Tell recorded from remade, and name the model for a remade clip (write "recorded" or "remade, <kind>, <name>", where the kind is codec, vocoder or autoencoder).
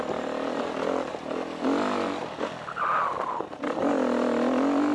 recorded